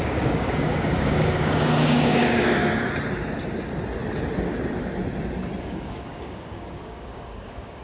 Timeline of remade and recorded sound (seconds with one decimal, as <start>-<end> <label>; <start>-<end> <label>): 0.0-2.6 remade; 2.6-5.6 recorded; 5.6-7.8 remade